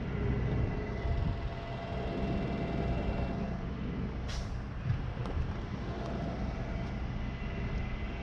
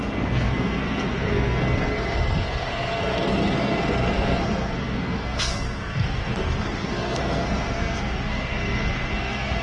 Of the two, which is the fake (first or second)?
second